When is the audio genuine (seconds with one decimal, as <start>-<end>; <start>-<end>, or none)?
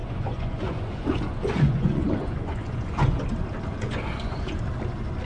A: 3.2-3.7; 4.6-5.3